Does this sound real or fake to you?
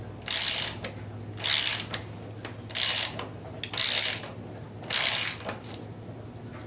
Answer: real